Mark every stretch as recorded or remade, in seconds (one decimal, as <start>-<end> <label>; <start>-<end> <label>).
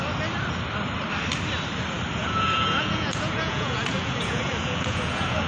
0.0-2.2 recorded; 2.2-5.5 remade